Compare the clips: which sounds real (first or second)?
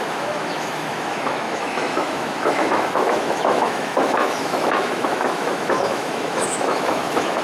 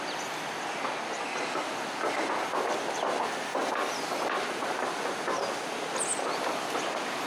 second